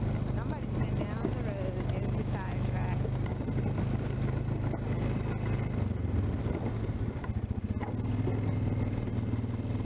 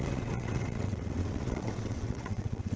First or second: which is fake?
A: second